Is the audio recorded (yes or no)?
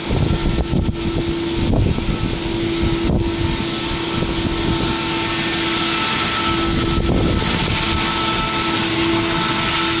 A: yes